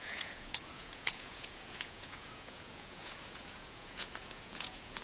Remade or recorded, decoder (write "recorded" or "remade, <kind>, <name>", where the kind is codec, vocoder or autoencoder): remade, vocoder, Vocos